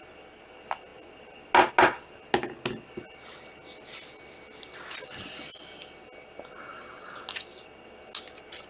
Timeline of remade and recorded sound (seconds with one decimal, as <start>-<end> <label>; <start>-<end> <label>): 0.0-8.7 recorded